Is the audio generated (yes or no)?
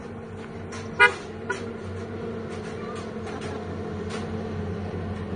no